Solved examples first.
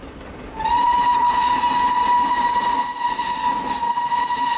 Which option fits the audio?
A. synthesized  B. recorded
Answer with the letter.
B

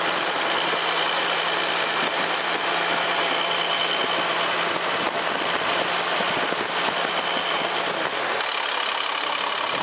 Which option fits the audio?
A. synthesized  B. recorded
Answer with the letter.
B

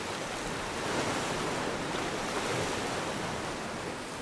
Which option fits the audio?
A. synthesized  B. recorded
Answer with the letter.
B